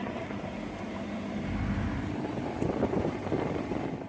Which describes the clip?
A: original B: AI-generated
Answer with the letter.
A